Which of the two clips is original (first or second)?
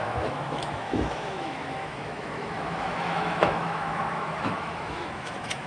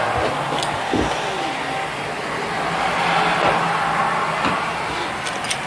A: second